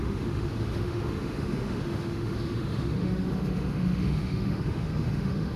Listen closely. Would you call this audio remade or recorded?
remade